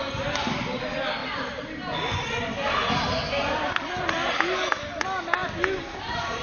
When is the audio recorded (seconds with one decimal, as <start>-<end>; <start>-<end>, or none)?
0.0-6.4